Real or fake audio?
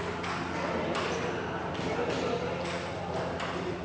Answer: real